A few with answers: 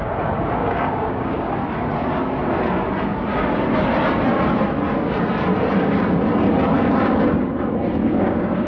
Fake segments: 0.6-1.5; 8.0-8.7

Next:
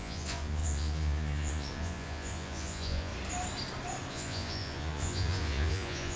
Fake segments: 0.0-3.1; 4.1-6.2